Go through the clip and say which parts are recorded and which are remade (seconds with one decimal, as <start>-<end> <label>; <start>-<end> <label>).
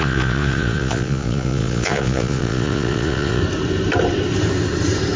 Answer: 0.0-3.4 remade; 3.4-5.2 recorded